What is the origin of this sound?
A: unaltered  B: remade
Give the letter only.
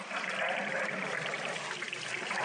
A